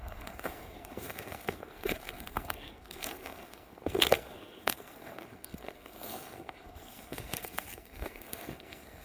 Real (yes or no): no